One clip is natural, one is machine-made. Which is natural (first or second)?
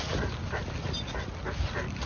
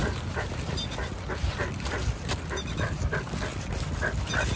first